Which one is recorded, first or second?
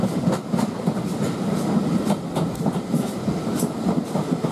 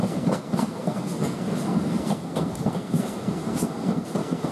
first